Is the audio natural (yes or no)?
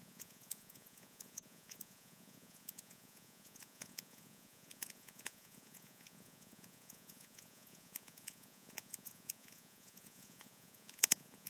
no